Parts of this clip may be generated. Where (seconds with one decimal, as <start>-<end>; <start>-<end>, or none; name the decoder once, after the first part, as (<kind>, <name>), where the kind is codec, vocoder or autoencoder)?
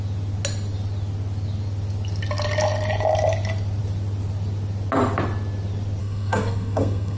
6.0-7.2 (codec, SNAC)